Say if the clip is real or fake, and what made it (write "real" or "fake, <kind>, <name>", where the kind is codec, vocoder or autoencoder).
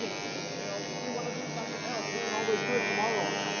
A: real